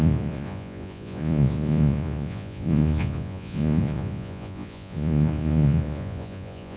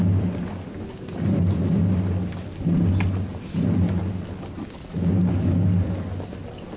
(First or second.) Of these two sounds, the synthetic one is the first